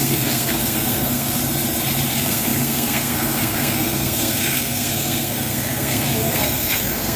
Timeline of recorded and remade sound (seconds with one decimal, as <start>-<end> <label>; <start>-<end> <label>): 0.0-1.4 remade; 1.4-2.1 recorded; 2.1-7.2 remade